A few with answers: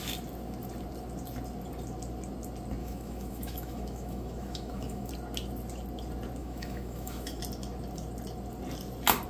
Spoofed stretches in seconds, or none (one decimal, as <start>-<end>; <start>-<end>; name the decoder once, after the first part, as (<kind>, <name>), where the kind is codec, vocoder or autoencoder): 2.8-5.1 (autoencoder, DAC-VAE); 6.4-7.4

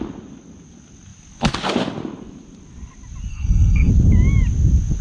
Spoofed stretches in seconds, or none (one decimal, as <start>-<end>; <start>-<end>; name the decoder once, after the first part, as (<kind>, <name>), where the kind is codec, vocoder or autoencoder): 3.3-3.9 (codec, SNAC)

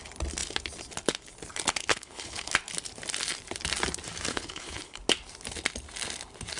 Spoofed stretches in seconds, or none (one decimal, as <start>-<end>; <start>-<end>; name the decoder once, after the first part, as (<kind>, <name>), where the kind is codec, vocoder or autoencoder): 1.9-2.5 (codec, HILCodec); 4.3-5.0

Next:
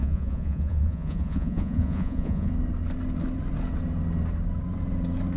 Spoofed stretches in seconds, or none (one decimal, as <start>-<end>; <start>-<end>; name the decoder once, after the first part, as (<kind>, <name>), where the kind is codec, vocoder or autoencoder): 0.0-2.5 (vocoder, Vocos)